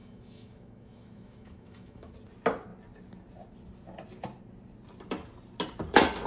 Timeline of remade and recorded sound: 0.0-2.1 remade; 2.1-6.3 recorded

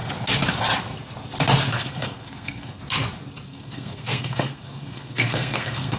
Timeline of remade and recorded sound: 0.0-1.7 recorded; 1.7-2.8 remade; 2.8-3.5 recorded; 3.5-6.0 remade

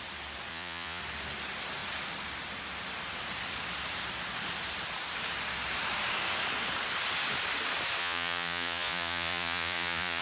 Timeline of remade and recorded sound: 0.0-0.5 recorded; 0.5-1.0 remade; 1.0-8.0 recorded; 8.0-10.2 remade

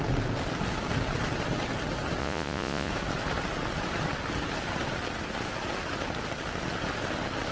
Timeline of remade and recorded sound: 0.0-2.2 recorded; 2.2-2.9 remade; 2.9-7.5 recorded